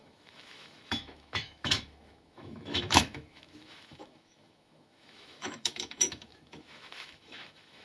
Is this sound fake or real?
fake